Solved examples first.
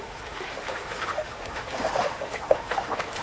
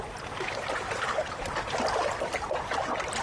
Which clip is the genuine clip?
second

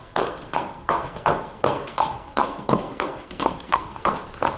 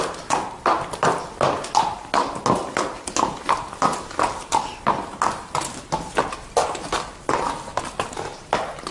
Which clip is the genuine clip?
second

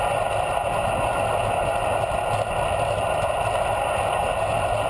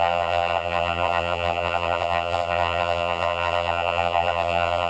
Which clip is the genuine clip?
first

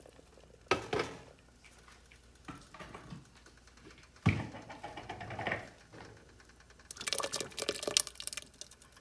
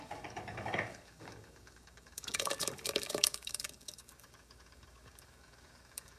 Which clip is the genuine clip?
first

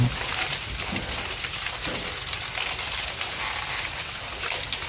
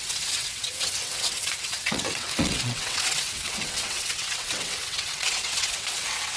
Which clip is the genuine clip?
first